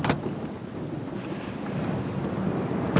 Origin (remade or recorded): recorded